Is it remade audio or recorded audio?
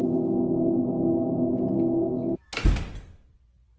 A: recorded